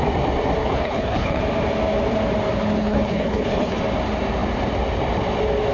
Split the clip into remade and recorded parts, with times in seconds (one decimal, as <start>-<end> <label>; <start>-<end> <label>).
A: 0.0-0.6 recorded; 0.6-1.4 remade; 1.4-2.8 recorded; 2.8-3.8 remade; 3.8-5.7 recorded